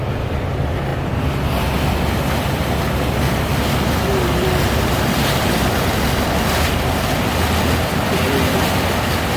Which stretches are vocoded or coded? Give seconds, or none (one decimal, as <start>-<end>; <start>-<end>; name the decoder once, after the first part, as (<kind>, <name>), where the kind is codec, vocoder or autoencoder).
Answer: none

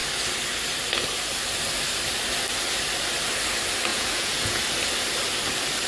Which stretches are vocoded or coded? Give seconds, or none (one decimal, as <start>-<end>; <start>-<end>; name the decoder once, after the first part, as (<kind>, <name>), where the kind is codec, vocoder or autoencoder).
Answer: 3.9-4.6 (vocoder, Vocos)

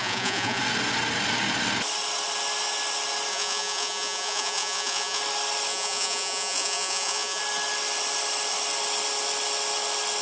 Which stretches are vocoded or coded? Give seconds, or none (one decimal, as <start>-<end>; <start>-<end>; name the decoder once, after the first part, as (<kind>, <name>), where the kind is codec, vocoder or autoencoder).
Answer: 0.0-0.6 (vocoder, Vocos); 3.3-5.2; 5.7-7.4